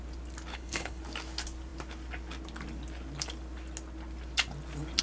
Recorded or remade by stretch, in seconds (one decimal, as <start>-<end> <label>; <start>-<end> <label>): 0.0-0.5 recorded; 0.5-1.0 remade; 1.0-5.0 recorded